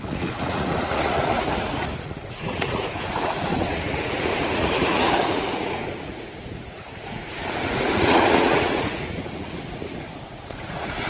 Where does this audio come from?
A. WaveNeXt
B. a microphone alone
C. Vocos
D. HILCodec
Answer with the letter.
C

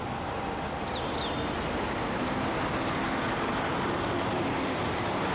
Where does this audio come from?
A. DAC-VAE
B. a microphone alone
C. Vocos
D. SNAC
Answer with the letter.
B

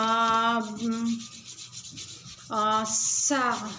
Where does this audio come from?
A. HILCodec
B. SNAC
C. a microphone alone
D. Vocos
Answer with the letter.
C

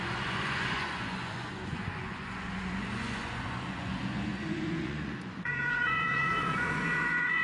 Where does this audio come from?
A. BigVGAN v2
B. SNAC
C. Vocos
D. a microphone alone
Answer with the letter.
C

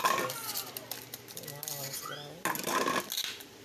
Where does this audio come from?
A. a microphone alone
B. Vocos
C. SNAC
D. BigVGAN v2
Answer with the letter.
A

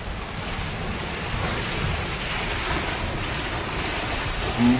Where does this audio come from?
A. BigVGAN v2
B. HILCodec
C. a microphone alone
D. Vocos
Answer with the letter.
A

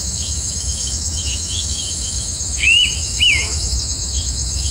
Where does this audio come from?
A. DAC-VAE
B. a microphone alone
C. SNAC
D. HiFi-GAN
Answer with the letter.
A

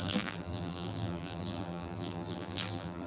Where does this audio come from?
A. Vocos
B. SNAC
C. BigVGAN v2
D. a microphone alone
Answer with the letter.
C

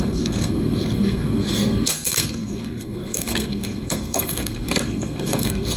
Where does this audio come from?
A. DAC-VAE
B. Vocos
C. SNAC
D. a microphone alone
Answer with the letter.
C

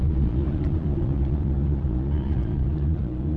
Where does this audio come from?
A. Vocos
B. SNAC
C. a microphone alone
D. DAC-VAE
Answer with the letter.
A